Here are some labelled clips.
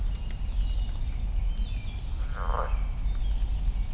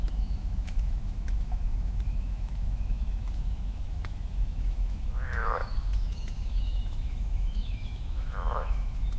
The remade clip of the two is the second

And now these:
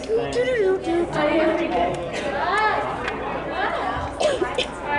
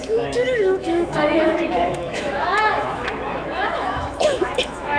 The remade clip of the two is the second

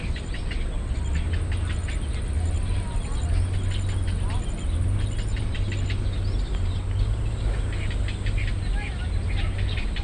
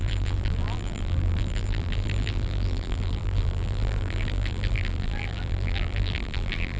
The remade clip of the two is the second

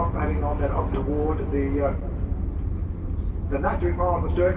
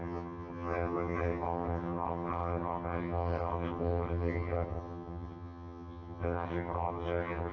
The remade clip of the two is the second